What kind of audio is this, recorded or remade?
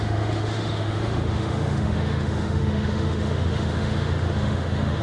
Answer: remade